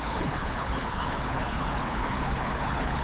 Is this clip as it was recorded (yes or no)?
no